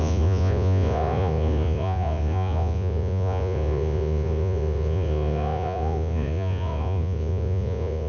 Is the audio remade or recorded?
remade